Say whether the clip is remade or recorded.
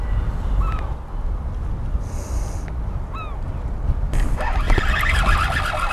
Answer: recorded